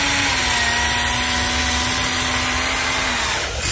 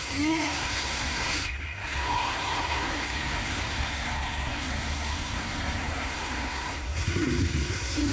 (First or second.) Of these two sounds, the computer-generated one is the second